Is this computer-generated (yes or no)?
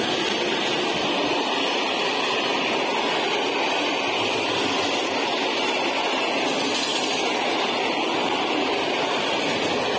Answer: no